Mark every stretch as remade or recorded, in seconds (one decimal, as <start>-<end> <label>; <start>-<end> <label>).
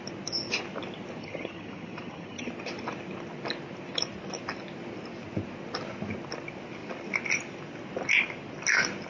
0.0-1.2 recorded; 1.2-2.5 remade; 2.5-9.1 recorded